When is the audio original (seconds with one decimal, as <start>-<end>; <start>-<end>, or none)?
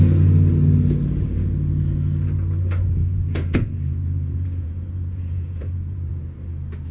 0.0-3.0; 6.2-6.9